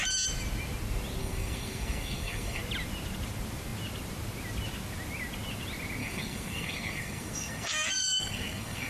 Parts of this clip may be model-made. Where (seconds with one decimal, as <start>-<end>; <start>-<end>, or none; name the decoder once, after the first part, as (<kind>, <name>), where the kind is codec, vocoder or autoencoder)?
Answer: 1.2-2.6 (codec, SNAC); 6.0-8.9

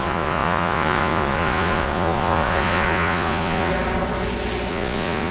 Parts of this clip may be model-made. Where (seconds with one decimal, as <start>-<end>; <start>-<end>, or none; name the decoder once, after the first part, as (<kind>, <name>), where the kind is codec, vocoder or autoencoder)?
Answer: 0.0-3.7 (vocoder, Vocos); 4.7-5.3